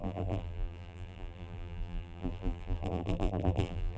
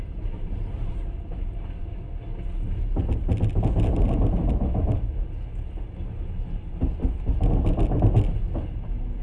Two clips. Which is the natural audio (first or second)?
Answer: second